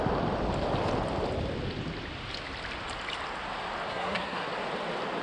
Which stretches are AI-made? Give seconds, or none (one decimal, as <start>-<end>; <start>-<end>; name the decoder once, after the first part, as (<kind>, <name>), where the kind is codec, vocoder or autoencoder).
3.9-4.5 (codec, SNAC)